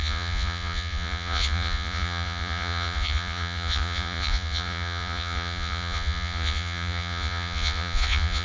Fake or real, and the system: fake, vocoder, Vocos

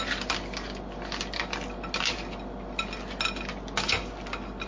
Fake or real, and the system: real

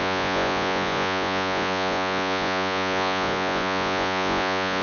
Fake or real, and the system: fake, vocoder, Vocos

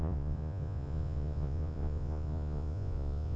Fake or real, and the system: fake, vocoder, Vocos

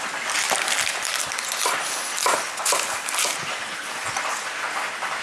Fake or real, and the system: real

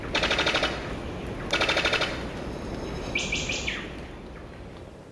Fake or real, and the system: real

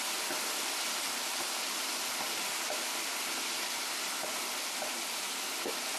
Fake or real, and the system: real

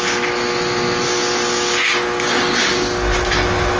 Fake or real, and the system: real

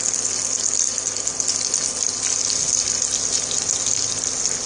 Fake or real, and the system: real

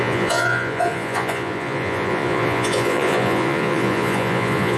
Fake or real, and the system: fake, vocoder, Vocos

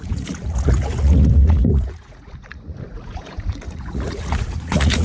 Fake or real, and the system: fake, vocoder, Vocos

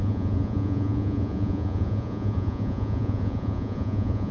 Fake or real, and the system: fake, vocoder, Vocos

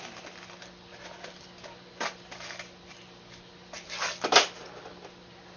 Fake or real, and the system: real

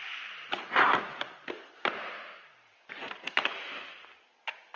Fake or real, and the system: real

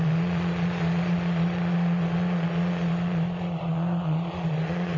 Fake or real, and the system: fake, vocoder, Vocos